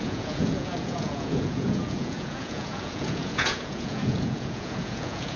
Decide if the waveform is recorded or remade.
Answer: remade